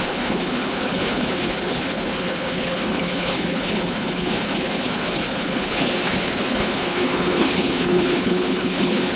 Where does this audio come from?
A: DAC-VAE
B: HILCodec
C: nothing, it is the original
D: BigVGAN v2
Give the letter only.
B